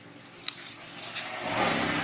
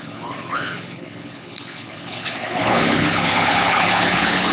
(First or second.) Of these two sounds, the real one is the first